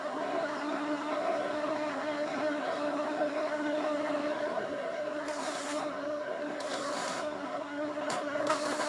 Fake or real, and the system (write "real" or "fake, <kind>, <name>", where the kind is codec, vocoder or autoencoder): fake, codec, SNAC